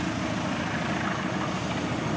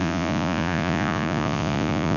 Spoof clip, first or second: second